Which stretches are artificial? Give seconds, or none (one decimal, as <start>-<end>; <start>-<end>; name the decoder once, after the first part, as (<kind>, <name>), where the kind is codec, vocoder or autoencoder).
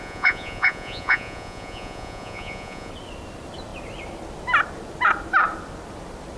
0.0-2.9 (vocoder, Vocos)